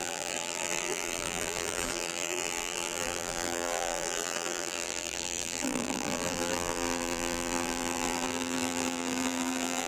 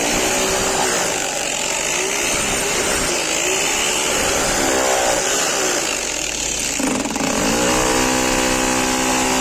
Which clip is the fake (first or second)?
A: first